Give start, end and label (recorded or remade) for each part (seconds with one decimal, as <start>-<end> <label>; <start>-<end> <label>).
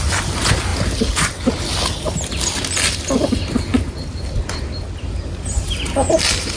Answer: 0.0-6.6 recorded